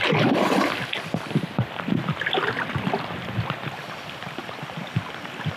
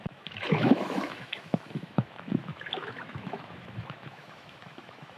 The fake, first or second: second